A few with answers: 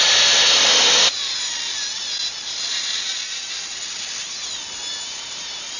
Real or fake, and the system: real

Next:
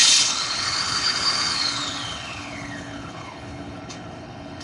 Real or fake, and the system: fake, codec, HILCodec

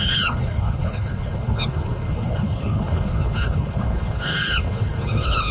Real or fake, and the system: fake, codec, HILCodec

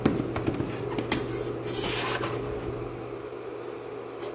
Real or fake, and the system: real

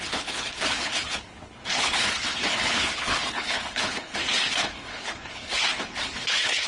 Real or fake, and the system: fake, codec, HILCodec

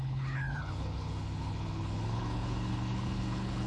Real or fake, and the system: fake, codec, HILCodec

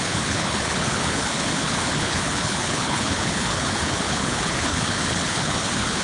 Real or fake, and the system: fake, codec, HILCodec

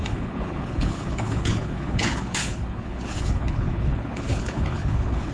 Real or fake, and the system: fake, codec, HILCodec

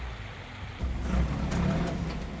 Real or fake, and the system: real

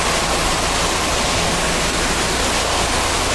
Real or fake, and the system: real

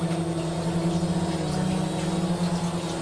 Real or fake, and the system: real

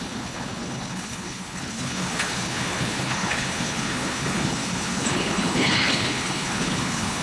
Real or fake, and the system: fake, codec, HILCodec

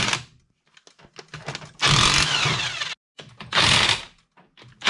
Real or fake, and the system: real